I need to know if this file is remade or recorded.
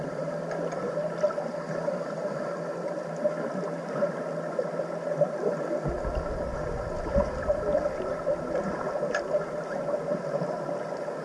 recorded